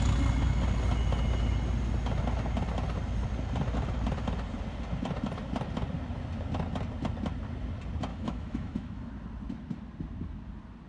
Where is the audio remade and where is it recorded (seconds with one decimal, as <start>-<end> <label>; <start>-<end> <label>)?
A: 0.0-8.1 recorded; 8.1-9.1 remade; 9.1-10.9 recorded